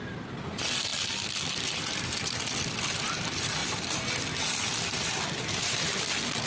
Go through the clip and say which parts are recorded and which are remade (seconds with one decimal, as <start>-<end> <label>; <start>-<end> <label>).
0.0-6.5 recorded